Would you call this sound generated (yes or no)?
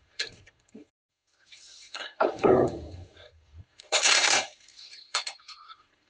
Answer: yes